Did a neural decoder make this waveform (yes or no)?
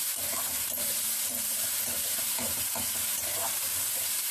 yes